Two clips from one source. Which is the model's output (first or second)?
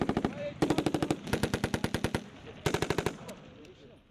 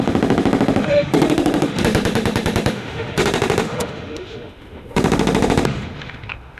second